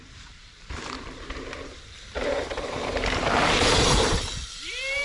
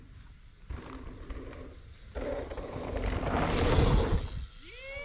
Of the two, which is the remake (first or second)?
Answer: first